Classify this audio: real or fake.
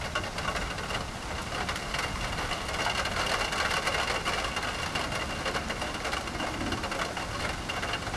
real